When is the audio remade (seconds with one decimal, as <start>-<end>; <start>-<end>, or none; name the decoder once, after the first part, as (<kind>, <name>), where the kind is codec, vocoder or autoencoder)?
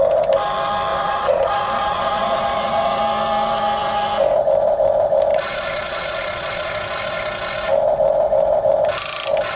0.9-3.0 (vocoder, Vocos); 5.3-6.7